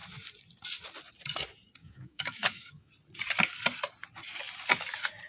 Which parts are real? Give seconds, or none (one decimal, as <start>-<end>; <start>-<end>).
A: 0.0-1.8; 2.9-5.3